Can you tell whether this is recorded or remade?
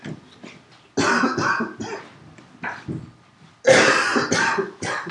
recorded